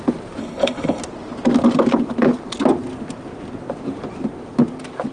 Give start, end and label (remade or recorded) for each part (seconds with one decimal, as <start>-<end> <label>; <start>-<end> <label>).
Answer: 0.0-0.4 recorded; 0.4-1.0 remade; 1.0-5.1 recorded